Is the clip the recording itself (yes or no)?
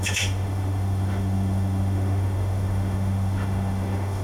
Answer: no